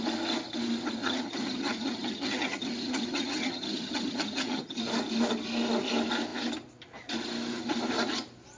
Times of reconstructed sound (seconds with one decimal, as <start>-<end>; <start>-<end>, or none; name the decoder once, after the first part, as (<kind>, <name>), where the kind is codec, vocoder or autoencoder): 1.0-4.8 (vocoder, HiFi-GAN)